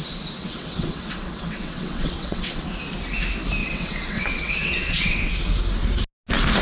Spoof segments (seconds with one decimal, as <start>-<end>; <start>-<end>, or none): 0.4-2.6; 3.6-5.3